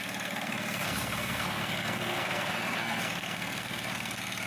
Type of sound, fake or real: fake